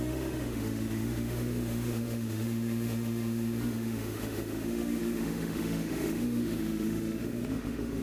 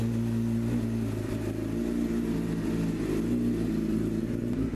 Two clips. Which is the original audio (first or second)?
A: second